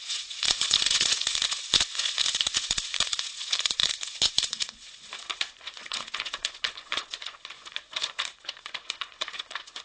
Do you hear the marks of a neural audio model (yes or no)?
yes